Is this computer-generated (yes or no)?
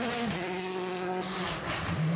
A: no